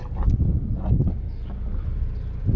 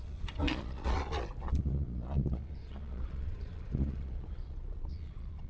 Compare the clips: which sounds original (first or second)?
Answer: first